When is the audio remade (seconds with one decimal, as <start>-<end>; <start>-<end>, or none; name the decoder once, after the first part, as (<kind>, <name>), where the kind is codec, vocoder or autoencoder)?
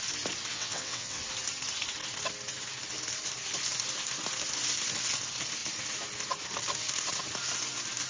0.5-1.2 (vocoder, WaveNeXt)